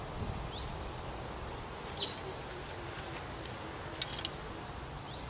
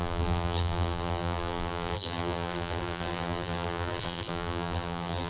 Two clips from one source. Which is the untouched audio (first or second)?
first